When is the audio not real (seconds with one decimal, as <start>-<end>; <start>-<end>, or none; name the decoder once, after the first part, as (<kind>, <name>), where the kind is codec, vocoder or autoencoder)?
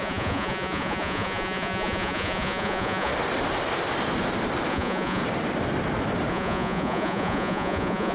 0.0-3.1 (vocoder, Vocos); 4.7-5.2; 6.3-8.1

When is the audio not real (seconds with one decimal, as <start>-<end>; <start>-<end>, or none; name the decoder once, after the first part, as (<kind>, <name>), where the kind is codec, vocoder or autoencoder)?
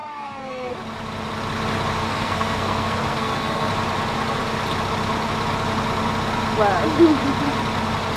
0.0-0.7 (codec, SNAC); 2.0-3.7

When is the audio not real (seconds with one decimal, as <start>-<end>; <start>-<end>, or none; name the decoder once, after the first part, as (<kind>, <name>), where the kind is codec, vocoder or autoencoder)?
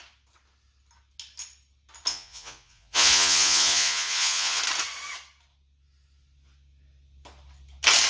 2.1-4.6 (vocoder, Vocos)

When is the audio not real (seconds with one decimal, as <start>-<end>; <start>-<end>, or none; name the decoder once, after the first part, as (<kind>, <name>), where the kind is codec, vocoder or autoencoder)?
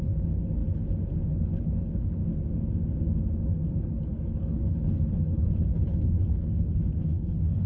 0.0-0.6 (codec, HILCodec); 1.3-2.2; 3.7-7.7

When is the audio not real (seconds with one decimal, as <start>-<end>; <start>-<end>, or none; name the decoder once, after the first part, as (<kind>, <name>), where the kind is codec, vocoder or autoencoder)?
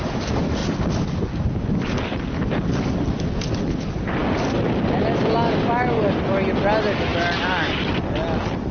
none